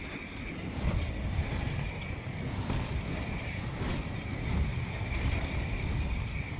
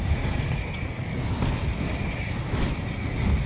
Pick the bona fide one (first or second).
second